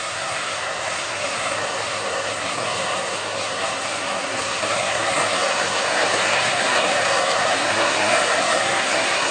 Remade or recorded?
remade